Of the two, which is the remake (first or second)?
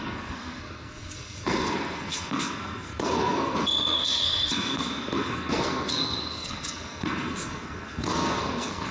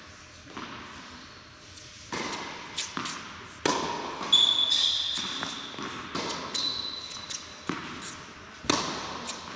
first